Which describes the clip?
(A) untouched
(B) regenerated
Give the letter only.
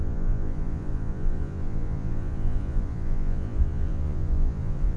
B